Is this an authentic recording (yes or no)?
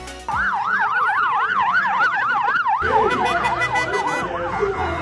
yes